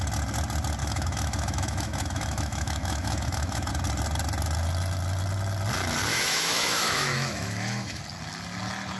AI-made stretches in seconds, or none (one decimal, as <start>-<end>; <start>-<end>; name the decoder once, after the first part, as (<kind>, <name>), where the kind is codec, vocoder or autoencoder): 0.8-3.7 (autoencoder, DAC-VAE); 6.1-8.0